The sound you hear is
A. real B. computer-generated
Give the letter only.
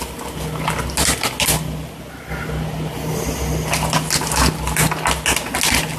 A